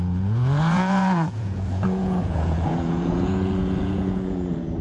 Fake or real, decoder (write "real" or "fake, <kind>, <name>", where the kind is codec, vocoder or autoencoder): fake, vocoder, Vocos